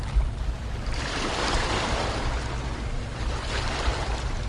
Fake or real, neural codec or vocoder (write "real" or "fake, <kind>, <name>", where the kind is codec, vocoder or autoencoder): real